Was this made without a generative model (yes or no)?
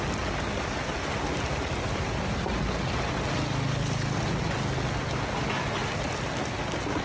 yes